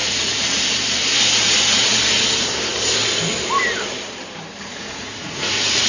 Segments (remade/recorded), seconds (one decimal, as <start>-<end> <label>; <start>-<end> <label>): 0.0-0.6 remade; 0.6-4.7 recorded; 4.7-5.9 remade